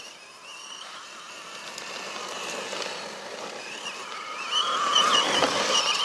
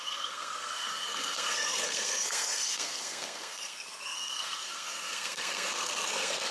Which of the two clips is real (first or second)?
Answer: first